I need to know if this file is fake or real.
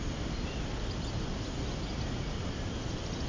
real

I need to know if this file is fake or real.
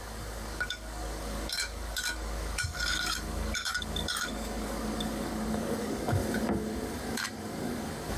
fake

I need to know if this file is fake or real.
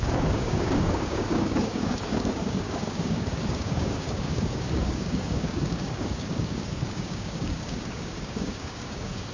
fake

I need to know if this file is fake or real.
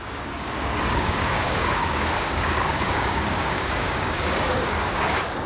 fake